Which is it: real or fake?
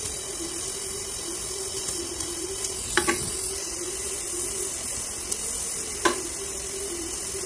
real